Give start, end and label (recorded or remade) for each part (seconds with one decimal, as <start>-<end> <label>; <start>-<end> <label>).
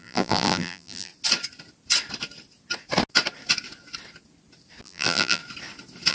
0.0-1.1 remade; 1.1-4.8 recorded; 4.8-5.4 remade; 5.4-6.1 recorded